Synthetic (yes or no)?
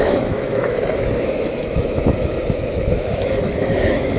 yes